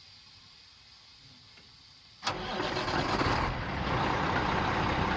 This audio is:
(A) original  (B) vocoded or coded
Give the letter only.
A